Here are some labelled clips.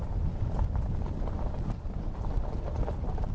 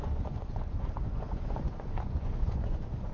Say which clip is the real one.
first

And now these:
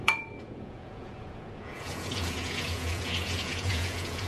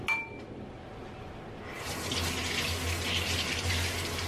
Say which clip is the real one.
second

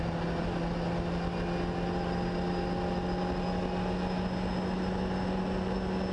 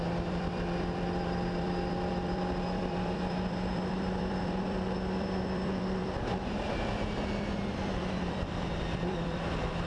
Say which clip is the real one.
first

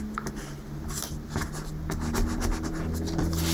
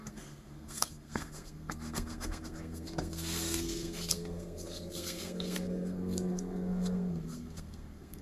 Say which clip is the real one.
first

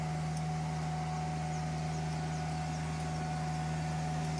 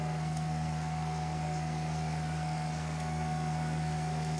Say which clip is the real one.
first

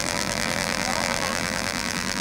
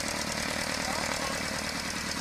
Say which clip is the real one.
second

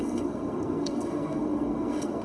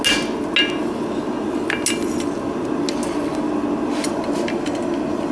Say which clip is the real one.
second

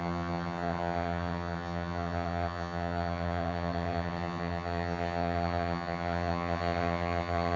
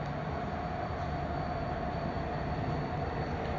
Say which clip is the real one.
second